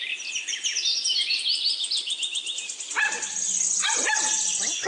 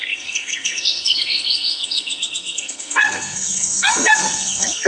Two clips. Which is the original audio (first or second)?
first